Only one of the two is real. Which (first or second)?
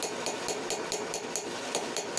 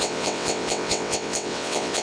first